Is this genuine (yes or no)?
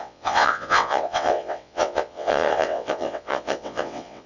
no